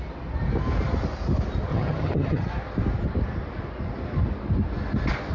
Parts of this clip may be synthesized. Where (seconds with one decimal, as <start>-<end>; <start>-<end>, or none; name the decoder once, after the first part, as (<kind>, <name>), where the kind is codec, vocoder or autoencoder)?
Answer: 1.7-2.5 (vocoder, HiFi-GAN)